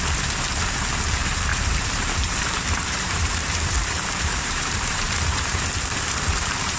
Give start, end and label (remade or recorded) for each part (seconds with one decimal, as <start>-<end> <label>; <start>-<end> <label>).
0.0-1.5 recorded; 1.5-5.6 remade; 5.6-6.8 recorded